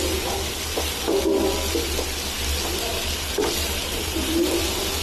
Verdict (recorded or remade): recorded